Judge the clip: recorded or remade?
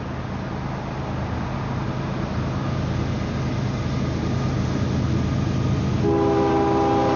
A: recorded